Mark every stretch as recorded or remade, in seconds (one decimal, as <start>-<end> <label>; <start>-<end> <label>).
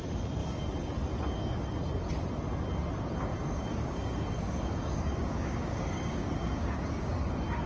0.0-3.3 recorded; 3.3-7.3 remade; 7.3-7.7 recorded